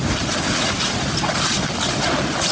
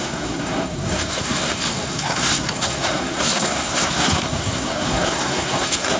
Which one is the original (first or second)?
first